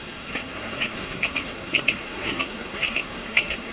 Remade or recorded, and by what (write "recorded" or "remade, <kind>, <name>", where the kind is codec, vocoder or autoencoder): remade, codec, SNAC